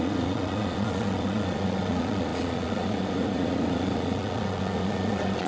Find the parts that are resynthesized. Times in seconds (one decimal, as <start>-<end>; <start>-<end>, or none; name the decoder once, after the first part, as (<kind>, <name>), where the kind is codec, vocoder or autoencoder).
0.0-5.5 (vocoder, Vocos)